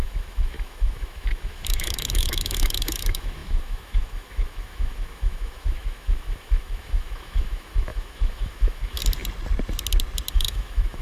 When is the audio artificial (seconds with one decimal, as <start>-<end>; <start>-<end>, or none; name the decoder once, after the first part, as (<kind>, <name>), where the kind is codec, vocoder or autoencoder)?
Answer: 0.0-9.0 (autoencoder, DAC-VAE); 10.3-11.0